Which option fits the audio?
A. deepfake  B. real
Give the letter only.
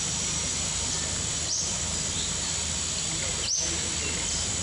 B